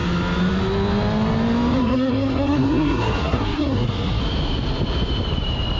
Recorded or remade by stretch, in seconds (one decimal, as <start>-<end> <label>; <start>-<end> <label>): 0.0-1.8 recorded; 1.8-4.2 remade; 4.2-5.8 recorded